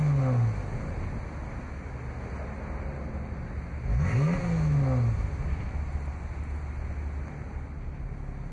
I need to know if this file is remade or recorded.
recorded